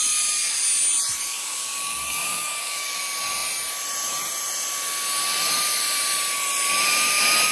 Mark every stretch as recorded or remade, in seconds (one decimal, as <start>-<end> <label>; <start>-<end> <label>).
0.0-1.3 recorded; 1.3-3.0 remade; 3.0-7.5 recorded